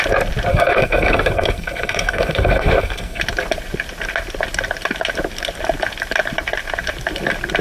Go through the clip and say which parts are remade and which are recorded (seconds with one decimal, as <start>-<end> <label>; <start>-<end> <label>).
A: 0.0-0.5 recorded; 0.5-3.2 remade; 3.2-7.6 recorded